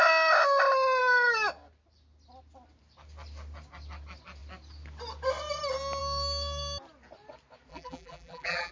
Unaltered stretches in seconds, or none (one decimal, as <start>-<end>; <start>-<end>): 0.0-7.7